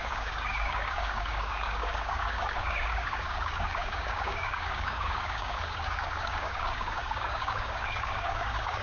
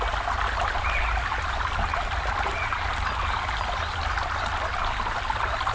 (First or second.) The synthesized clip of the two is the first